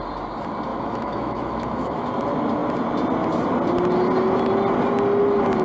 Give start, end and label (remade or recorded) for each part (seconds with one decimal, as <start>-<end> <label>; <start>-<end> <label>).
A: 0.0-0.7 recorded; 0.7-2.1 remade; 2.1-5.6 recorded